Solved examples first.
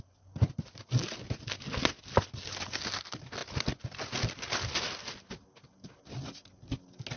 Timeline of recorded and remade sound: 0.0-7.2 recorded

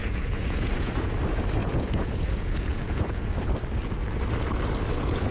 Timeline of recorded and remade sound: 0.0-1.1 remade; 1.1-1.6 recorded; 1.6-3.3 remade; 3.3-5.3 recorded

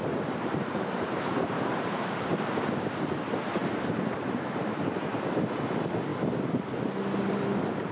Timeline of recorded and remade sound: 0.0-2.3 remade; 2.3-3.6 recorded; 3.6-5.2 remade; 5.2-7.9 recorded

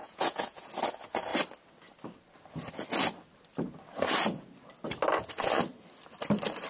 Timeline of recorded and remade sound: 0.0-0.7 remade; 0.7-6.7 recorded